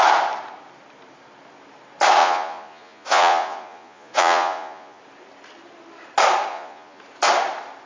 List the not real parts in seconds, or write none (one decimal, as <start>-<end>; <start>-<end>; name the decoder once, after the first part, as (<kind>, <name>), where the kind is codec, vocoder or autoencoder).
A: 2.2-5.0 (vocoder, Vocos); 6.5-7.0